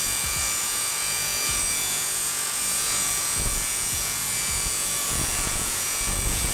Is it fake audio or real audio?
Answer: fake